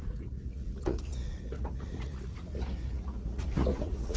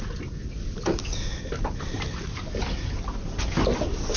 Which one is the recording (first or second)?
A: second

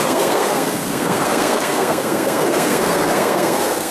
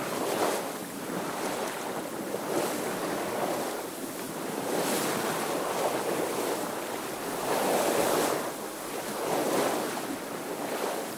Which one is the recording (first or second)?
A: second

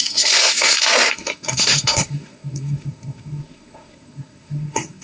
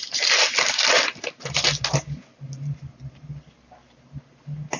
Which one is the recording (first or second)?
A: second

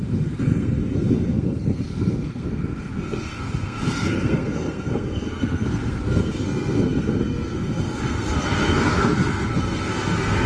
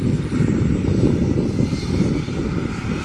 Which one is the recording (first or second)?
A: second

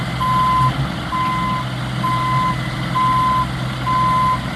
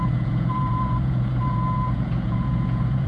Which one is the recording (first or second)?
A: first